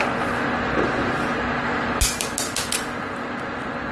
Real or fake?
real